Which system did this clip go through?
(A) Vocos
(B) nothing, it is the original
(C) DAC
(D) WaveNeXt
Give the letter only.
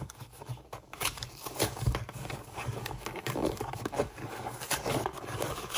C